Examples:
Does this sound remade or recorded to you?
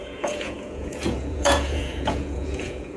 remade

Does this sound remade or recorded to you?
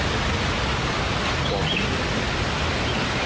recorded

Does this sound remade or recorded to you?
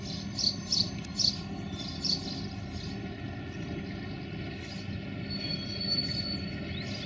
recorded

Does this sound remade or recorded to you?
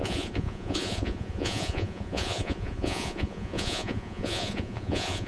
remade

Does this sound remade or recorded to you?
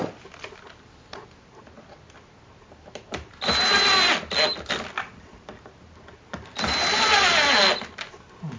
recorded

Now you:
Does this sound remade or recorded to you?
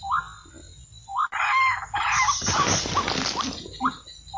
recorded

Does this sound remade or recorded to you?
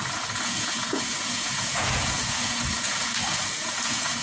remade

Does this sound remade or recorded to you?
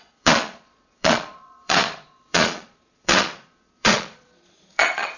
remade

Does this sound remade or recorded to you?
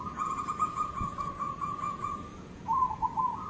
remade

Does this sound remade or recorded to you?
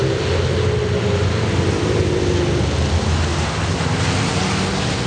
recorded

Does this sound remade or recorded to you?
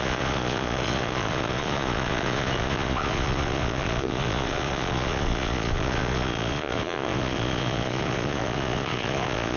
remade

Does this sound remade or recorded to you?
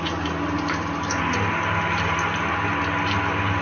recorded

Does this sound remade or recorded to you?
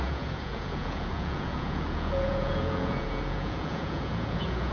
remade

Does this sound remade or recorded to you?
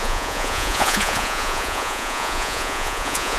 remade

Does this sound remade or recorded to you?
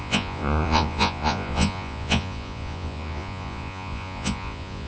remade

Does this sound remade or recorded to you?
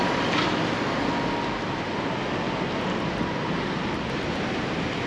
recorded